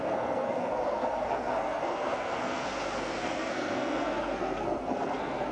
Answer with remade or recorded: remade